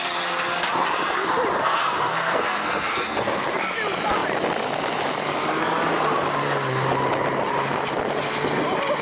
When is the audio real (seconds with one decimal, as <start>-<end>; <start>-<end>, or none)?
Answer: 0.0-1.6; 3.4-9.0